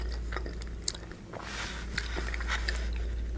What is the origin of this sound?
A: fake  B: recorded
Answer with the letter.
B